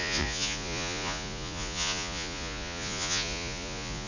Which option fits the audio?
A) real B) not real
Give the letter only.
B